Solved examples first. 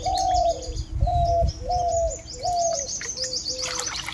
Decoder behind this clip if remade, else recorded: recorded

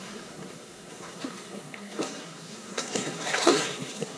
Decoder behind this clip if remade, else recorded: remade, codec, SNAC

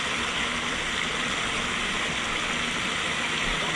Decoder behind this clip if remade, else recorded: recorded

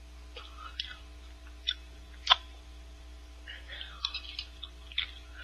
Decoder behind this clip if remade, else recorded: recorded